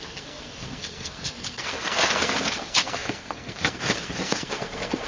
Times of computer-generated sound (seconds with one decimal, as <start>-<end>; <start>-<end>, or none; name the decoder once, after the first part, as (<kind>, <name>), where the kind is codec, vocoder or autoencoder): 0.0-5.1 (codec, SNAC)